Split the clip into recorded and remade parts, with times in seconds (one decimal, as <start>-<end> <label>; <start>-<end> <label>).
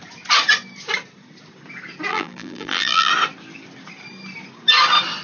0.0-2.1 recorded; 2.1-3.1 remade; 3.1-5.2 recorded